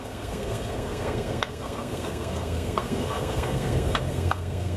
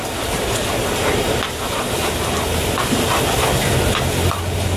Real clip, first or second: second